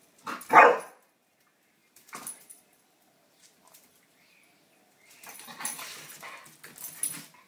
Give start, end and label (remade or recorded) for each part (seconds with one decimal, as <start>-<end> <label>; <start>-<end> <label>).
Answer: 0.0-1.8 recorded; 1.8-6.3 remade; 6.3-7.5 recorded